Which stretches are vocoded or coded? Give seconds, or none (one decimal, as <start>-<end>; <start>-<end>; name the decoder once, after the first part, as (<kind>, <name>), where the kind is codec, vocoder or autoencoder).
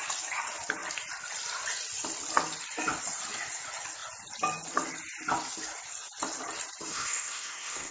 6.9-7.9 (codec, SNAC)